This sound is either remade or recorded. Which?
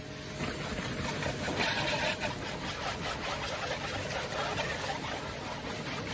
recorded